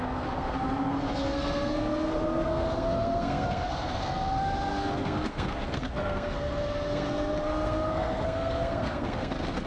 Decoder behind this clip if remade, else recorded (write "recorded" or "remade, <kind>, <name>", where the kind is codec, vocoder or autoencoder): remade, codec, SNAC